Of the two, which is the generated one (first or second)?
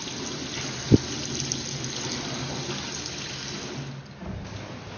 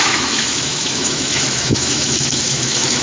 second